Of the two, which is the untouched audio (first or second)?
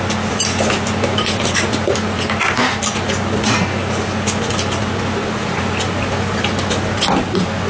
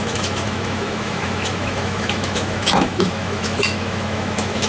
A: first